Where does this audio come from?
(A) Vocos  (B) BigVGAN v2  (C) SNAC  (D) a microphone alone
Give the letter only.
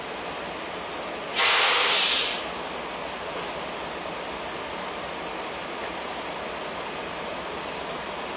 D